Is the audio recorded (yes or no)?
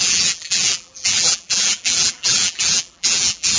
no